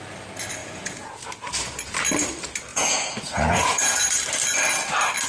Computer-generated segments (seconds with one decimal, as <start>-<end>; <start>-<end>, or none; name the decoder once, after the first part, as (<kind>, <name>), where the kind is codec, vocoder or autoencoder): 0.6-1.2 (vocoder, Vocos); 2.7-3.9